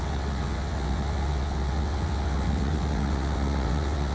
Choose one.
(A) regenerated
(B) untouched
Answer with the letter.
A